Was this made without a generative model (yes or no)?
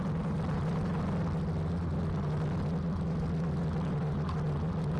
yes